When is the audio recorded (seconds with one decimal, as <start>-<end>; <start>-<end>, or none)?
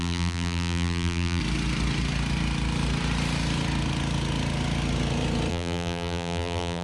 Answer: 1.4-5.5